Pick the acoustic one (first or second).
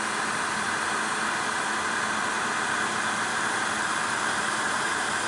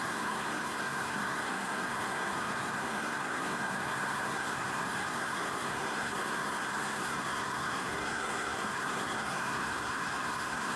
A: first